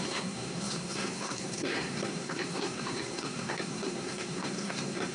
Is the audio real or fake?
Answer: fake